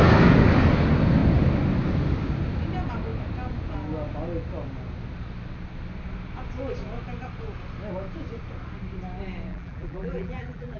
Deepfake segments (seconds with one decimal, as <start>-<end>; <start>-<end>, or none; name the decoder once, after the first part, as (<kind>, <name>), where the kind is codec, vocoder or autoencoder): 9.5-10.8 (vocoder, BigVGAN v2)